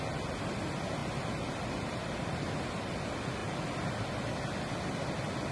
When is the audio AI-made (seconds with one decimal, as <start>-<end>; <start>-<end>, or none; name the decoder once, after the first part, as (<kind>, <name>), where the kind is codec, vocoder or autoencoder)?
1.0-2.5 (vocoder, BigVGAN v2); 3.4-4.0